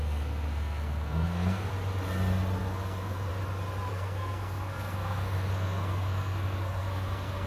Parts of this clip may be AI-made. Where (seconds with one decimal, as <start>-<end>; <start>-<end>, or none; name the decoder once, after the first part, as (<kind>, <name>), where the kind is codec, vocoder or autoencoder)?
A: 0.0-1.7 (codec, SNAC); 2.6-3.3; 3.9-7.5